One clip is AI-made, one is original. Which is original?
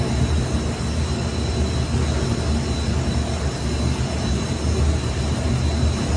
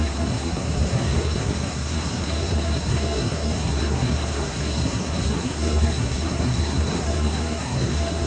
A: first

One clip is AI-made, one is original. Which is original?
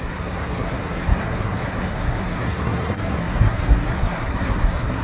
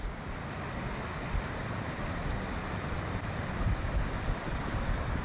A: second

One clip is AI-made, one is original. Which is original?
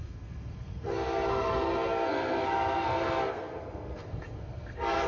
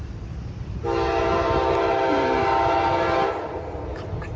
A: second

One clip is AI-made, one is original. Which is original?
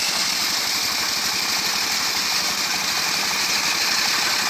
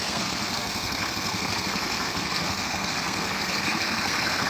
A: first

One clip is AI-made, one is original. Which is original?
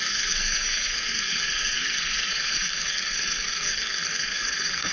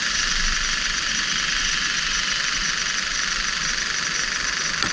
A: second